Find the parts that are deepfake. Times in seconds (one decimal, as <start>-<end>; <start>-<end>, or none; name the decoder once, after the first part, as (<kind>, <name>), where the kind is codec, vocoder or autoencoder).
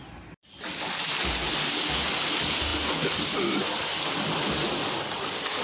none